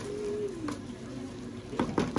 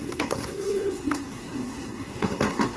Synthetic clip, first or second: second